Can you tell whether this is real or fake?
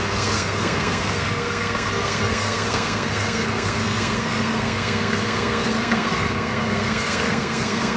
fake